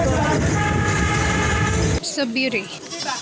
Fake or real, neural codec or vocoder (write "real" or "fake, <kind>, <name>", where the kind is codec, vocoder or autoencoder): real